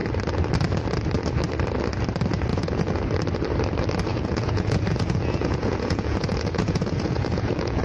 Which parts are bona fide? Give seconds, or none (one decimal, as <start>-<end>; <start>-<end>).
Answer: 0.0-2.5; 3.1-4.1